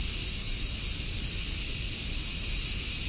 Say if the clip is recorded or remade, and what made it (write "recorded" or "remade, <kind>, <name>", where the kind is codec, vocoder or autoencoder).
recorded